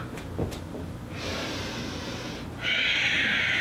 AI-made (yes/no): no